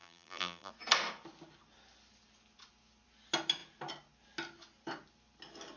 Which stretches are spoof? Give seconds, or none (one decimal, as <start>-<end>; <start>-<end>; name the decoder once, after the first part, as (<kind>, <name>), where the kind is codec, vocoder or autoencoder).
0.0-0.7 (vocoder, BigVGAN v2)